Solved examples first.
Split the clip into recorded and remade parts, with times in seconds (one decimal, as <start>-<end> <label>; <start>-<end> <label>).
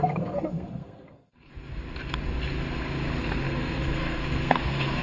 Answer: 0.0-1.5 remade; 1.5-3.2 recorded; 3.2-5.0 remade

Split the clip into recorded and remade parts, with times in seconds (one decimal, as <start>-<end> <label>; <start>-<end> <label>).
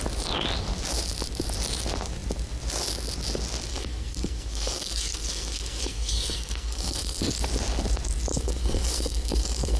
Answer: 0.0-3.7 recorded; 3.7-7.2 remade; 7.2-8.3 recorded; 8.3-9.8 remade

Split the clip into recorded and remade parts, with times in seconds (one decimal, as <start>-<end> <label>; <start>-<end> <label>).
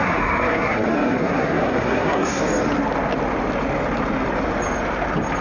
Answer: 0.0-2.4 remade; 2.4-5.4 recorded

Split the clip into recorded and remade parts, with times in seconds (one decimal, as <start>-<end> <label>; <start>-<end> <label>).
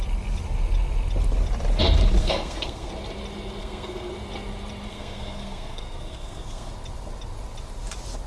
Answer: 0.0-2.2 recorded; 2.2-2.9 remade; 2.9-3.6 recorded; 3.6-4.1 remade; 4.1-4.9 recorded; 4.9-6.7 remade; 6.7-8.3 recorded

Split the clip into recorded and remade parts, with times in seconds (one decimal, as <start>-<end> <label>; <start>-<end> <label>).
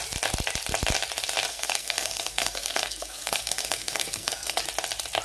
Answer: 0.0-1.5 recorded; 1.5-4.6 remade; 4.6-5.2 recorded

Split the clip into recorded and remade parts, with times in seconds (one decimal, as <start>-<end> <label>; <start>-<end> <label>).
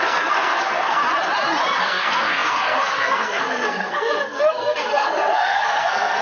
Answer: 0.0-1.0 remade; 1.0-1.8 recorded; 1.8-6.2 remade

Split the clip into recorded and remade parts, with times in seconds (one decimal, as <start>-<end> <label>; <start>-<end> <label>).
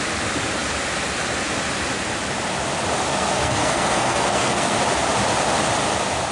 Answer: 0.0-3.1 recorded; 3.1-4.8 remade; 4.8-6.3 recorded